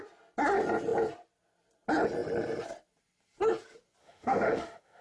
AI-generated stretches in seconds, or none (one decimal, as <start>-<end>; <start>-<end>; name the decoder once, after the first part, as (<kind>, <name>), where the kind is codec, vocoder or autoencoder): 4.0-5.0 (autoencoder, DAC-VAE)